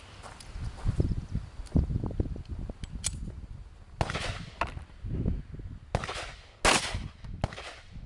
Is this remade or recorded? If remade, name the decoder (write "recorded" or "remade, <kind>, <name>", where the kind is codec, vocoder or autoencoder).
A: recorded